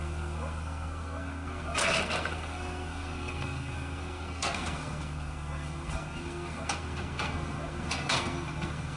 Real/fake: fake